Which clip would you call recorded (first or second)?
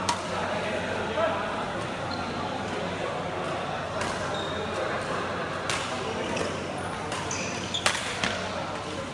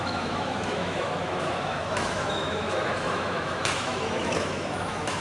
first